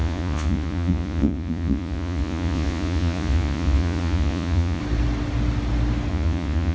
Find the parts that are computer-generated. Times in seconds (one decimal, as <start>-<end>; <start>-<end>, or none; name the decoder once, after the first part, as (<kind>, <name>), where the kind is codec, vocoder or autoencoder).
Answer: 0.0-4.8 (vocoder, Vocos); 6.1-6.7